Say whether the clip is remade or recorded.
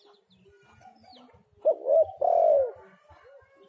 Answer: recorded